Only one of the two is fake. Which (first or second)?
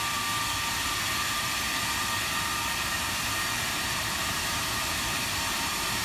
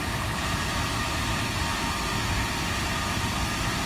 first